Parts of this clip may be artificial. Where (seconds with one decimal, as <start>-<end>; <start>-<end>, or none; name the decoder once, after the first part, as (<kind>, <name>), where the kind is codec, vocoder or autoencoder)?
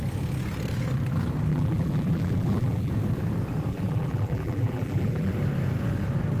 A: 1.5-2.9 (vocoder, BigVGAN v2); 3.7-5.3